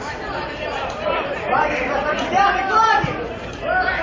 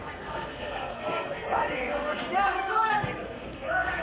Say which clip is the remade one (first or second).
second